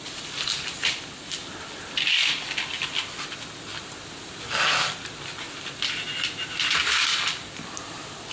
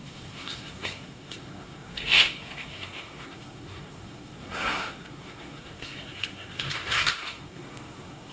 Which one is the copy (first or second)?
second